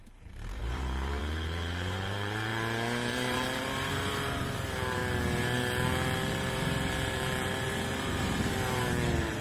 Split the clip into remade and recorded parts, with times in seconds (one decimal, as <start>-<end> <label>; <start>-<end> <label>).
0.0-5.0 remade; 5.0-6.3 recorded; 6.3-9.4 remade